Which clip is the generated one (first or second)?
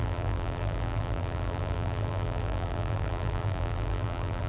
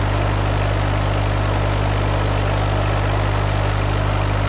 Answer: first